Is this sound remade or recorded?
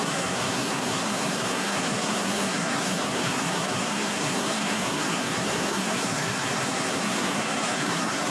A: remade